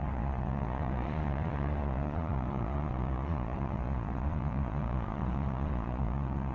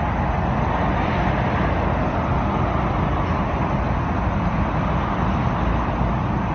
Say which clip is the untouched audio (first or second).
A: second